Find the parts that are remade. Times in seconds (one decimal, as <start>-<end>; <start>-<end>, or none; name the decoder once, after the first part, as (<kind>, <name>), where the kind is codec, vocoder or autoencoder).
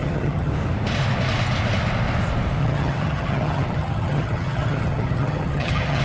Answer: 0.0-0.5 (vocoder, HiFi-GAN); 2.6-6.0